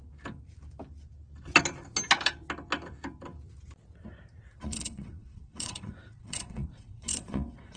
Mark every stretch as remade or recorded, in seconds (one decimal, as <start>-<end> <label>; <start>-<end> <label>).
0.0-4.5 recorded; 4.5-7.8 remade